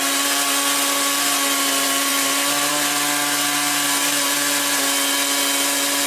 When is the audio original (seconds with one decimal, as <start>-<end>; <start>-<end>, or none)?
0.0-6.1